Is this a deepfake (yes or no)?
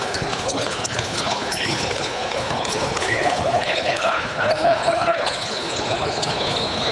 yes